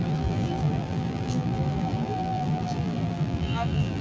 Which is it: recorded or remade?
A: remade